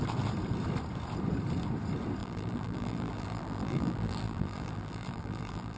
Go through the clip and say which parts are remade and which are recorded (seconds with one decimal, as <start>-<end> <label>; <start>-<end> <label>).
0.0-2.2 recorded; 2.2-5.8 remade

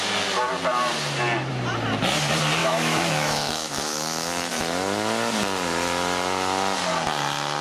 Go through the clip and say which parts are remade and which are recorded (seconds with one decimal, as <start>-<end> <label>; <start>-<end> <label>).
0.0-2.6 recorded; 2.6-4.7 remade; 4.7-7.6 recorded

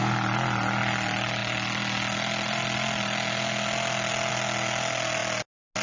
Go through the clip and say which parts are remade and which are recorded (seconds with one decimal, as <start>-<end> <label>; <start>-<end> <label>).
0.0-5.8 recorded

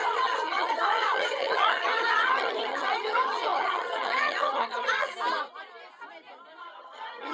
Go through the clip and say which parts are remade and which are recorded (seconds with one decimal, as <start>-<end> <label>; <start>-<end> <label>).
0.0-5.1 remade; 5.1-6.6 recorded; 6.6-7.3 remade

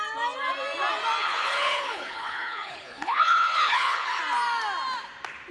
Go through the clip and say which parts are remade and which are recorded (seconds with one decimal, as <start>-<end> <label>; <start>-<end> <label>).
0.0-1.2 recorded; 1.2-4.2 remade; 4.2-5.5 recorded

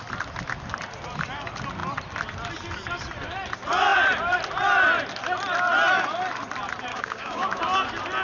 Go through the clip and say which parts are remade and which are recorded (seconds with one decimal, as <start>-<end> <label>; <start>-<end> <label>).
0.0-6.9 recorded; 6.9-7.6 remade; 7.6-8.2 recorded

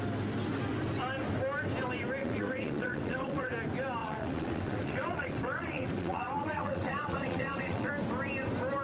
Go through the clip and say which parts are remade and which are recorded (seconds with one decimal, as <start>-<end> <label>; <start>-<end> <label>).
0.0-2.2 recorded; 2.2-3.5 remade; 3.5-4.0 recorded; 4.0-7.9 remade; 7.9-8.8 recorded

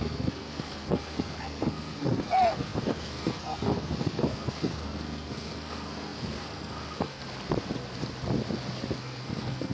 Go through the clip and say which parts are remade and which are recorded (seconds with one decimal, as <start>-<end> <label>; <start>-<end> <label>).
0.0-7.2 remade; 7.2-9.0 recorded; 9.0-9.7 remade